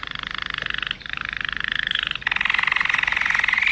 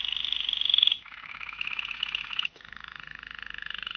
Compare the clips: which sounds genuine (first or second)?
first